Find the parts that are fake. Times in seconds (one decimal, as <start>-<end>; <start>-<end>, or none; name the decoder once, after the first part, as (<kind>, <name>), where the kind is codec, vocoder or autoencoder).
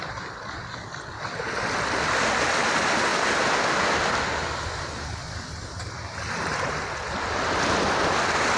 none